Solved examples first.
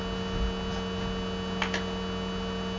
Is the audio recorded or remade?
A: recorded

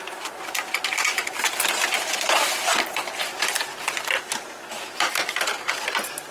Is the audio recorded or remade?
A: recorded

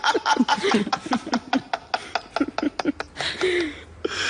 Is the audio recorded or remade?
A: recorded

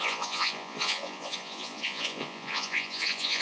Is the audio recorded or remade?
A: remade